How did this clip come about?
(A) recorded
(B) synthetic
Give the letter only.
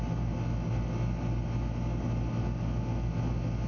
A